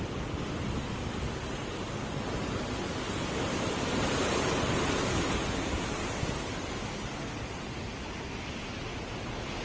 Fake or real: real